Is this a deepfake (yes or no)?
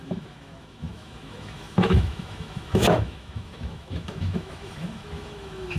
yes